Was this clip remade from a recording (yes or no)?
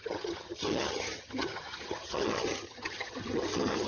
yes